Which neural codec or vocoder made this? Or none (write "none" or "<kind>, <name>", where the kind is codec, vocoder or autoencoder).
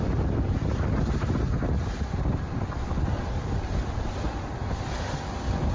none